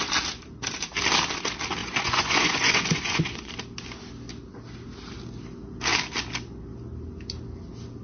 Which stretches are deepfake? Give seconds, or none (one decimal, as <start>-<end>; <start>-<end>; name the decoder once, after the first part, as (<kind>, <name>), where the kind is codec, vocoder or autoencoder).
1.8-3.5 (vocoder, Vocos)